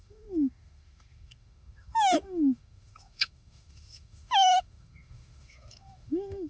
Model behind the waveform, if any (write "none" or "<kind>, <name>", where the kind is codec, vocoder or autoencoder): autoencoder, DAC-VAE